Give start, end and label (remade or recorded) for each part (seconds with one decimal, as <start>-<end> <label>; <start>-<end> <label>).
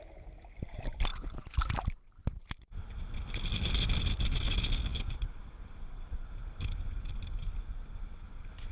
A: 0.0-4.9 recorded; 4.9-5.6 remade; 5.6-8.7 recorded